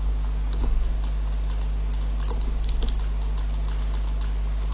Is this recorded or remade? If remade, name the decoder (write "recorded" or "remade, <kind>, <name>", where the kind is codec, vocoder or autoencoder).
recorded